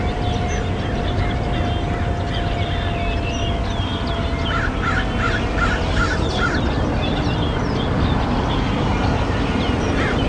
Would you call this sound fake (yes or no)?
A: no